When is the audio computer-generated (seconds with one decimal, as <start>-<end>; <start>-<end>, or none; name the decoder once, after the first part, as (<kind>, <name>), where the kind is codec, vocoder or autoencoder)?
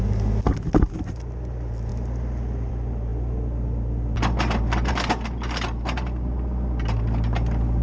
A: none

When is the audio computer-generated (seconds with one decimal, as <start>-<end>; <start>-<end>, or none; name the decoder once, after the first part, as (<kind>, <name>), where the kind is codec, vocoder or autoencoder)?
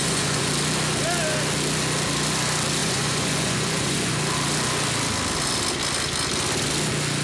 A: 0.0-0.5 (vocoder, Vocos); 2.8-4.2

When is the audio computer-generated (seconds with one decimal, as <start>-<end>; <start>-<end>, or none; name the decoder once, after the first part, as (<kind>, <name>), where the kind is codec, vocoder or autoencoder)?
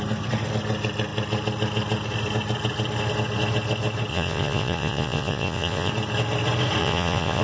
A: 4.1-5.9 (vocoder, Vocos); 6.8-7.4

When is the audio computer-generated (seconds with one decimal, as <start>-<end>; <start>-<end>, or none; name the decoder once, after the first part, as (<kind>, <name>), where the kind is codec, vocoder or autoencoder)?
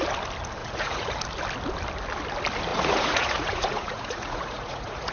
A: 0.6-1.2 (vocoder, Vocos); 2.7-5.1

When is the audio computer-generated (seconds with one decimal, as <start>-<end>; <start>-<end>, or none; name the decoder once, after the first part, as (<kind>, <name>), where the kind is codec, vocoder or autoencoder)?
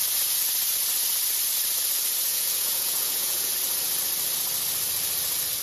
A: 2.3-3.5 (vocoder, Vocos)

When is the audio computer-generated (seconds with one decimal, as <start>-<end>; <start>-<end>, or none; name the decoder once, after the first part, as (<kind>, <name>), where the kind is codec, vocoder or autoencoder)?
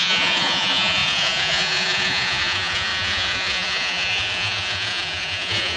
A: 0.0-5.8 (vocoder, Vocos)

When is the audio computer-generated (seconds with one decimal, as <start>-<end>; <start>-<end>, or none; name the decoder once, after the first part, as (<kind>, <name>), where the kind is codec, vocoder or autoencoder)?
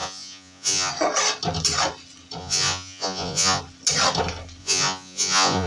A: 0.0-0.9 (vocoder, Vocos); 2.4-3.6; 4.6-5.7